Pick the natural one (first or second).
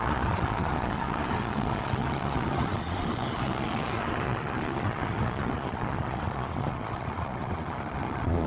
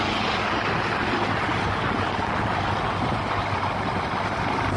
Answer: second